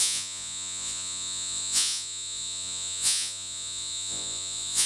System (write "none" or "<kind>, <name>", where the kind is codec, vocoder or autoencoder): vocoder, Vocos